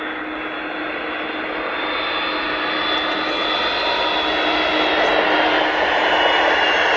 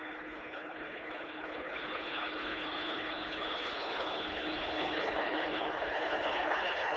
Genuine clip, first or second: first